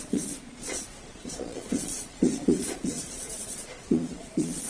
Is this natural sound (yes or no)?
no